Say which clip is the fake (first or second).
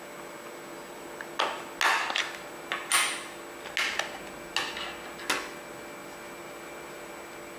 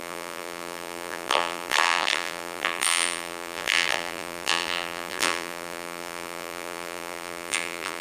second